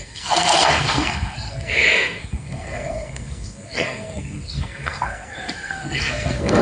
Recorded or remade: remade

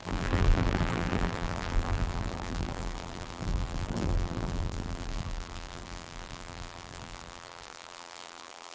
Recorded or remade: remade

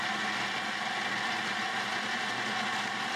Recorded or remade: recorded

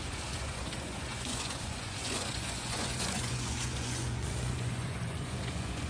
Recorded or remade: remade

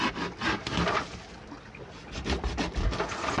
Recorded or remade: recorded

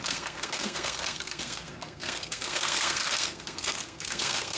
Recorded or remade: remade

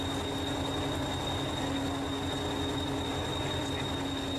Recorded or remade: recorded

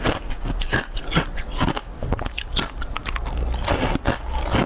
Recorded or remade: recorded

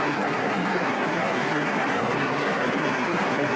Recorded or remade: remade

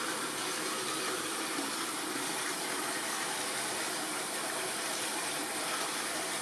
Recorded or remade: recorded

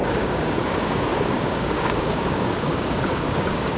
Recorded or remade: remade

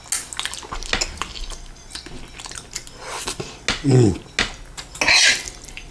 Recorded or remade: recorded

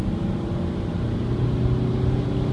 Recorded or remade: recorded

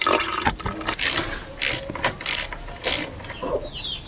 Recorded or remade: recorded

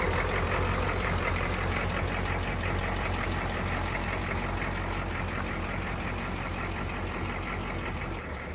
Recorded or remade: recorded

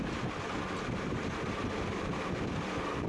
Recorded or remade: remade